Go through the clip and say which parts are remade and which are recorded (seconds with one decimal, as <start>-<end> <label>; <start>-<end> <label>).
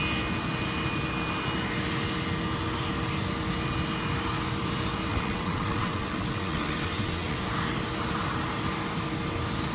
0.0-5.1 recorded; 5.1-7.4 remade; 7.4-9.7 recorded